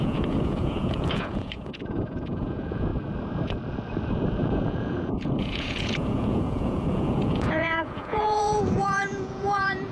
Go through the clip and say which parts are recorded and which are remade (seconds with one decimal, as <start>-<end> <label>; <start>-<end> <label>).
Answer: 0.0-2.9 remade; 2.9-4.4 recorded; 4.4-9.9 remade